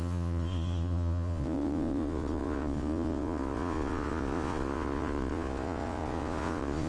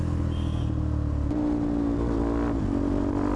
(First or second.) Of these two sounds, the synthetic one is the first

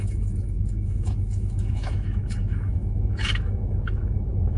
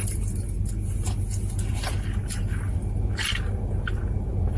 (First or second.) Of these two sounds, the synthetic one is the first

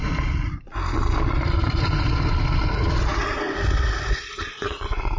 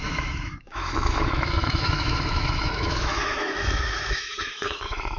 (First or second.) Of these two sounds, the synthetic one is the second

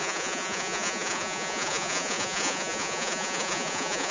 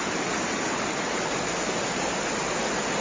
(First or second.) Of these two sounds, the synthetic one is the first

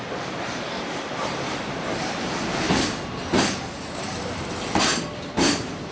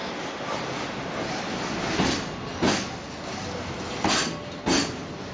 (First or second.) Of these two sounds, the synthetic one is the first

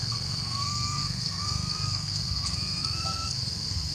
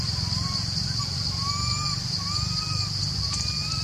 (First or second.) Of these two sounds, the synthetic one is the first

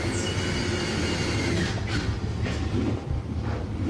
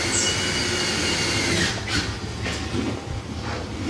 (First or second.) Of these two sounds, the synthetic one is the first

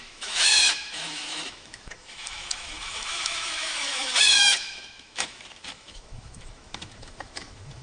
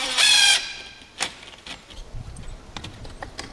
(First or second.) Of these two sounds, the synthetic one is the first